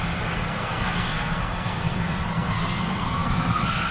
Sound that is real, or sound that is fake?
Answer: fake